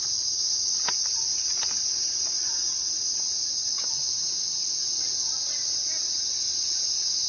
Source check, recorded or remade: recorded